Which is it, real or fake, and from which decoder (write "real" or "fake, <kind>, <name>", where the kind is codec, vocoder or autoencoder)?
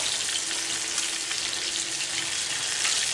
real